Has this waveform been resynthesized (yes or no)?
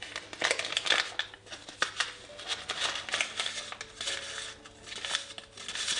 no